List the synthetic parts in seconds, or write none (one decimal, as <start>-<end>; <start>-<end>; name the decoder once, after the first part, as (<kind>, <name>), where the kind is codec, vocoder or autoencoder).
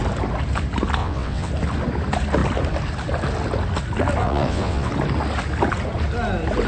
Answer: 1.0-1.5 (vocoder, WaveNeXt); 4.2-4.9